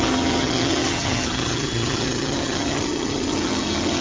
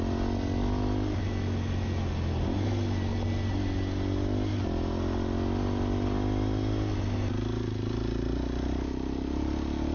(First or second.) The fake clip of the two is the first